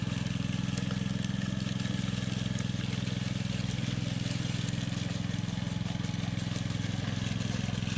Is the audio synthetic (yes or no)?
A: no